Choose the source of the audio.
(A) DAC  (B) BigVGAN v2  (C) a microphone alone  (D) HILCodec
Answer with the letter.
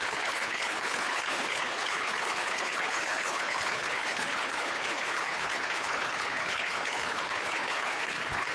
D